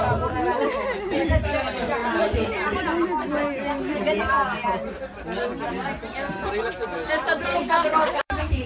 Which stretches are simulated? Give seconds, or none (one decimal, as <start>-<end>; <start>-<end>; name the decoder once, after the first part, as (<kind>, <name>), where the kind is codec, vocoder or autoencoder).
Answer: 7.5-8.7 (codec, DAC)

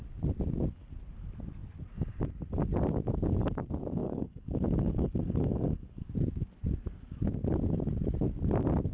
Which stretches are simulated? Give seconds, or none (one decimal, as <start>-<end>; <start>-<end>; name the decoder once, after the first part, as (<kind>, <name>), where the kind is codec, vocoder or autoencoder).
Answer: 4.0-6.1 (codec, DAC)

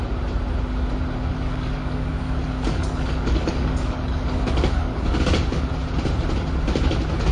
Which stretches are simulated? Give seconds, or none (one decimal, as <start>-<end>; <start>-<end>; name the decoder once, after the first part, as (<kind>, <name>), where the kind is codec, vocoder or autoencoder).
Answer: 1.3-5.7 (codec, DAC)

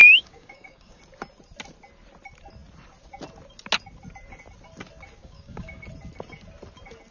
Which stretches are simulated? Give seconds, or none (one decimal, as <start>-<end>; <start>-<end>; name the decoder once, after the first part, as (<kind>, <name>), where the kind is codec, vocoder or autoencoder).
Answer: 0.0-1.0 (codec, DAC); 5.2-5.8